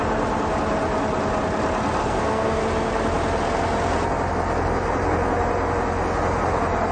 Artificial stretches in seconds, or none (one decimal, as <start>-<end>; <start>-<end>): 2.0-2.6